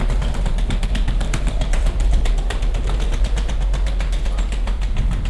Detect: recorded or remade remade